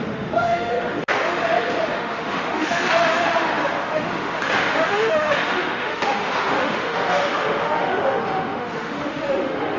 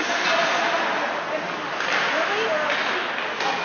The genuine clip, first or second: second